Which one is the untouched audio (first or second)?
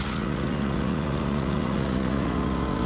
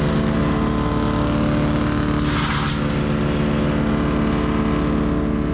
second